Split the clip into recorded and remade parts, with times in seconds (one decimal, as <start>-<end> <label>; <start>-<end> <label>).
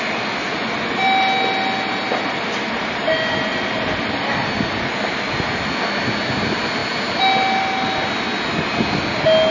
0.0-9.5 recorded